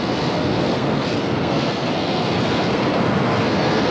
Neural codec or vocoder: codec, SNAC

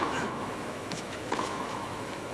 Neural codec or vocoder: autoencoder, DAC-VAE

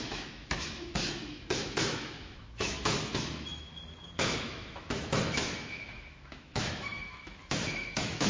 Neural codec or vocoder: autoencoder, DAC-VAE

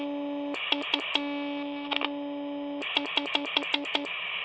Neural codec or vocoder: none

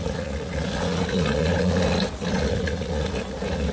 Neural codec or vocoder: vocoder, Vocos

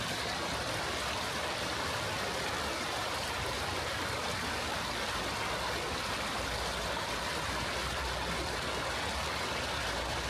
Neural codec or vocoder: none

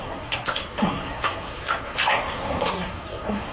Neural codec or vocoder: codec, SNAC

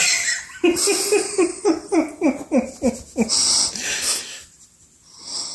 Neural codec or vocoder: none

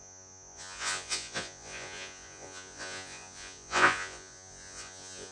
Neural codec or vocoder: vocoder, Vocos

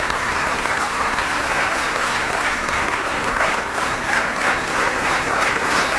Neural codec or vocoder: codec, SNAC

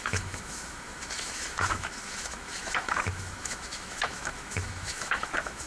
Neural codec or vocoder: autoencoder, DAC-VAE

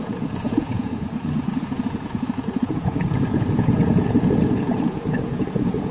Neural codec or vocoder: vocoder, Vocos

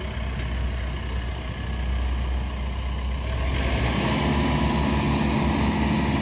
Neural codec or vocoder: none